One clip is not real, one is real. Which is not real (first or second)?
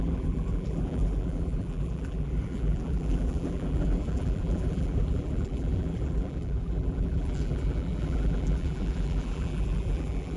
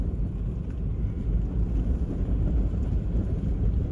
first